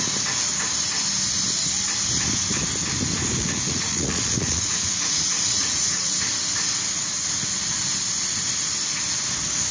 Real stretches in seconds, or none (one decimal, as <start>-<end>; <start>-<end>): 0.0-3.4; 6.0-9.7